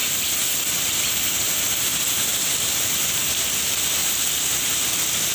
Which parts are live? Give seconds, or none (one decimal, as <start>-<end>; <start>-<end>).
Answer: 1.3-1.9; 3.1-5.3